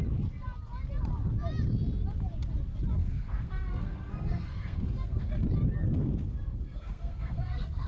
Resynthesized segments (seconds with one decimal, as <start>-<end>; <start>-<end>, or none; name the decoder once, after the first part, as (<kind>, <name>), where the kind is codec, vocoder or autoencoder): 3.0-5.3 (codec, SNAC); 5.8-7.9